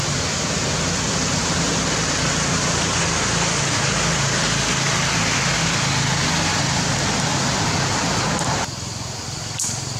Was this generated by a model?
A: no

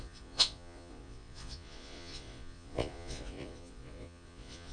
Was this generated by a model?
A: yes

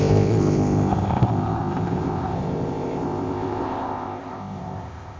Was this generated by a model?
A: yes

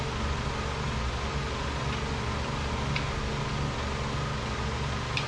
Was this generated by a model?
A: no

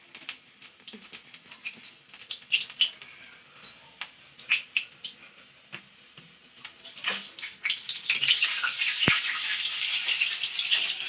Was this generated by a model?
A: no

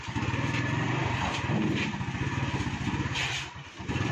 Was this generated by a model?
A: no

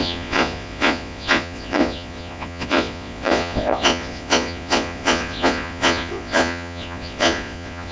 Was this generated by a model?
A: yes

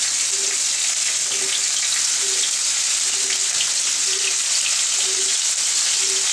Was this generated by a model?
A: no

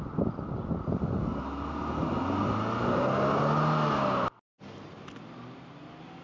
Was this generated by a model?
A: no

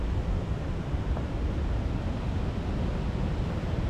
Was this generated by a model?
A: no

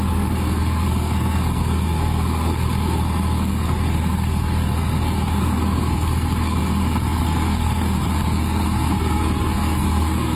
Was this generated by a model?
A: yes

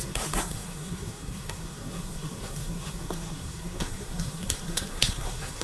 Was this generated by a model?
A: yes